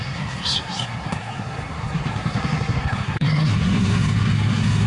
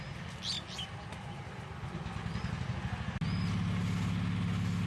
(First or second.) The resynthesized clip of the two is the first